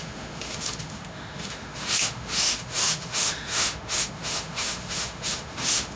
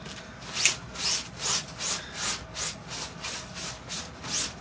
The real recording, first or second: second